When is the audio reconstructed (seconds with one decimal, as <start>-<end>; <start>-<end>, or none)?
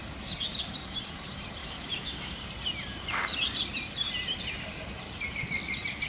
1.6-2.3